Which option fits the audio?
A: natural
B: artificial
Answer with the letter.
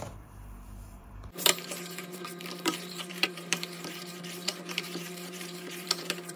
B